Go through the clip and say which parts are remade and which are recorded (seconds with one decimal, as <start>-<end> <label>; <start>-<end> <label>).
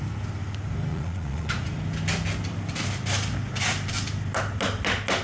0.0-0.9 recorded; 0.9-1.5 remade; 1.5-5.2 recorded